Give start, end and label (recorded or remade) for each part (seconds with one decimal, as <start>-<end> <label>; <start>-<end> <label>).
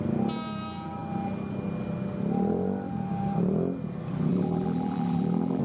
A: 0.0-4.3 recorded; 4.3-5.6 remade